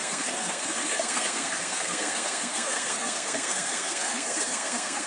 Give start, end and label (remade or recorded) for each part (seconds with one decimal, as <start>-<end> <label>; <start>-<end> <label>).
0.0-5.1 remade